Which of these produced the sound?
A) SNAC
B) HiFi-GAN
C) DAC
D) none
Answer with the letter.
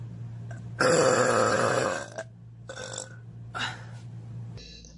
D